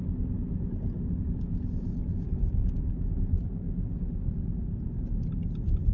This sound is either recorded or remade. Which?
recorded